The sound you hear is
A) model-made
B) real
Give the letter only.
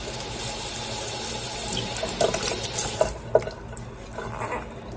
B